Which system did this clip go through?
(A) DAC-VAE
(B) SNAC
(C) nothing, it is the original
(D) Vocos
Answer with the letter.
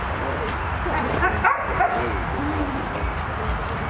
C